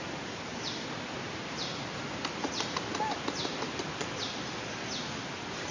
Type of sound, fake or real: real